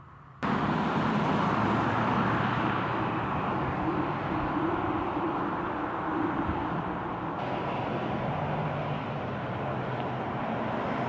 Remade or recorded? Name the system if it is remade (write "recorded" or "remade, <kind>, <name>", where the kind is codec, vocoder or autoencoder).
remade, vocoder, BigVGAN v2